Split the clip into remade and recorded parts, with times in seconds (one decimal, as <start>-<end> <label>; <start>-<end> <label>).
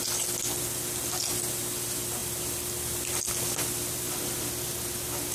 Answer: 0.0-5.3 recorded